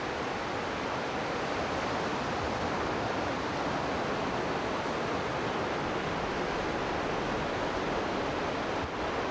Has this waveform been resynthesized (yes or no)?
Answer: no